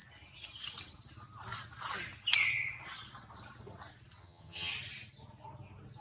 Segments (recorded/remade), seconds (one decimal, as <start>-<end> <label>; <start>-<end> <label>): 0.0-4.2 recorded; 4.2-4.7 remade; 4.7-6.0 recorded